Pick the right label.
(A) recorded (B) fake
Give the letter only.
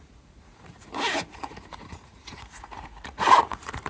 B